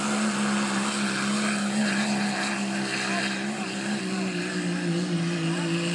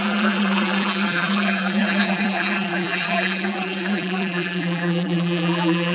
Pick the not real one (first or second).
second